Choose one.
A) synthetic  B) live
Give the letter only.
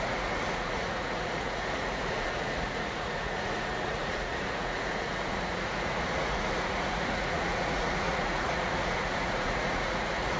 A